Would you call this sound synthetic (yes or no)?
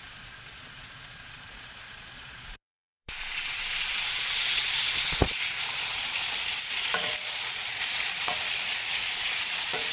yes